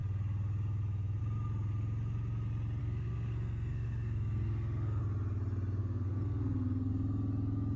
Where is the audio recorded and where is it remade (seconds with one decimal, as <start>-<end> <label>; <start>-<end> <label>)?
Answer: 0.0-2.8 recorded; 2.8-5.0 remade; 5.0-5.8 recorded; 5.8-6.9 remade; 6.9-7.8 recorded